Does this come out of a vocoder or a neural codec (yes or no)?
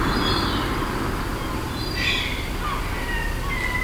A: no